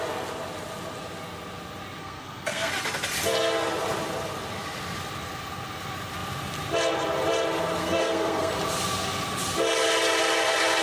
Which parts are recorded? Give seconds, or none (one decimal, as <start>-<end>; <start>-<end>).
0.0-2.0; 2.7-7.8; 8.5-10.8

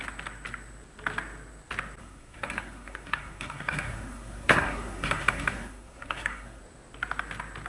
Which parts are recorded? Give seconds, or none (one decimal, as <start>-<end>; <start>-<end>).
0.0-2.0; 6.6-7.7

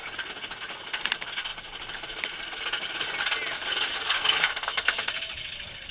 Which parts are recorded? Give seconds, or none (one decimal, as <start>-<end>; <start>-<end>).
0.0-4.0; 5.1-5.9